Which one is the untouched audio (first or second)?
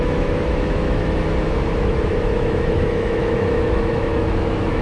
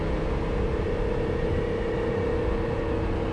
second